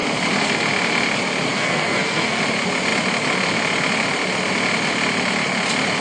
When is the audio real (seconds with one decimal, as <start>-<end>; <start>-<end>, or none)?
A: 0.0-1.5; 2.4-6.0